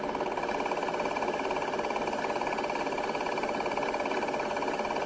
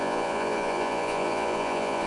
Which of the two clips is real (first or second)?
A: first